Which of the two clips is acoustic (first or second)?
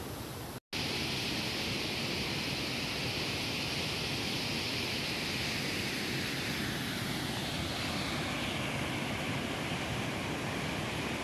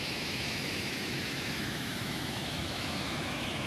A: first